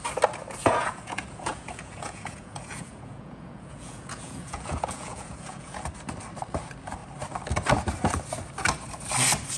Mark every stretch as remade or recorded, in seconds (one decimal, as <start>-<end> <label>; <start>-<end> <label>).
0.0-0.6 recorded; 0.6-5.8 remade; 5.8-9.6 recorded